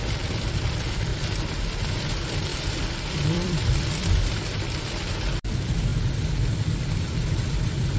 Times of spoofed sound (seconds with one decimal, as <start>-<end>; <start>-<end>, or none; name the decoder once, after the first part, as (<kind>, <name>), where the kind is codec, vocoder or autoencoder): 0.0-1.1 (vocoder, BigVGAN v2); 1.8-8.0

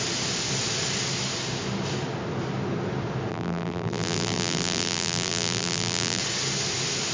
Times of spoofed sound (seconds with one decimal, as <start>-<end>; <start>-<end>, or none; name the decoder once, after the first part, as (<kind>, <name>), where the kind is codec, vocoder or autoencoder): 3.3-6.2 (vocoder, BigVGAN v2)

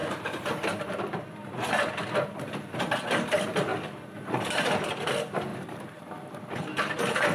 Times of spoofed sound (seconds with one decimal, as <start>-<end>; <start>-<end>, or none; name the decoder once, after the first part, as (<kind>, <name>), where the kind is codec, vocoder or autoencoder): 0.0-1.7 (vocoder, BigVGAN v2); 3.7-5.1; 5.5-6.1

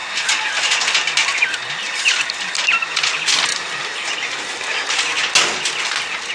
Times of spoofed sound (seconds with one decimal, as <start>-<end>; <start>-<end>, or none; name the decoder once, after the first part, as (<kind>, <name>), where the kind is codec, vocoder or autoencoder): 3.5-5.0 (vocoder, BigVGAN v2)